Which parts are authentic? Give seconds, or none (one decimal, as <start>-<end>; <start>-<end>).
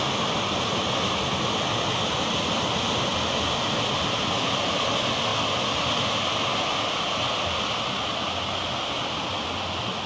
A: 0.0-10.1